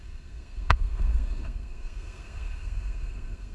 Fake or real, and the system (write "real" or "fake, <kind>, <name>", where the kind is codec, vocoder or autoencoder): fake, codec, SNAC